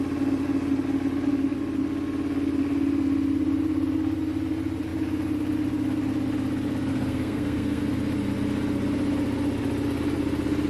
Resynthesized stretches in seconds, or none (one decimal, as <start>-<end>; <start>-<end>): 6.9-7.8